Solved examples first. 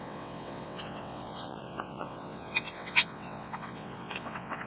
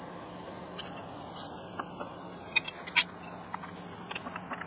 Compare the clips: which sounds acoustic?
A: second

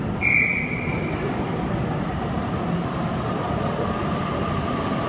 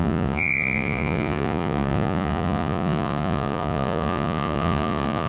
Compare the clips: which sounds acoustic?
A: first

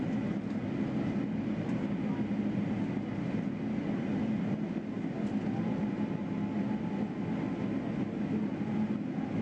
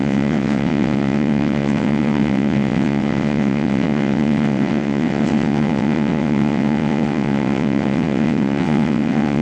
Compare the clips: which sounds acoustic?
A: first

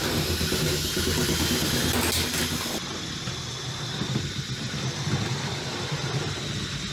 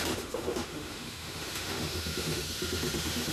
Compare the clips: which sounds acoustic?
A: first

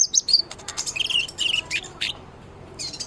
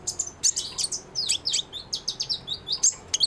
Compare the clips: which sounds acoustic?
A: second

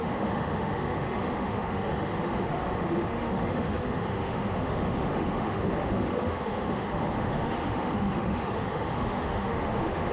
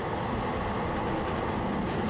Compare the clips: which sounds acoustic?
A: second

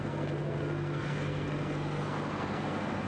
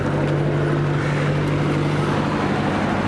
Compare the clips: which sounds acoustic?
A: second